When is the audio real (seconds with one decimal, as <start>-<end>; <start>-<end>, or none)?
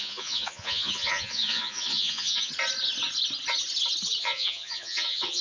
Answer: 2.5-4.2